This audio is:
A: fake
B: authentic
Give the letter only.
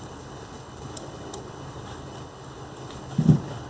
A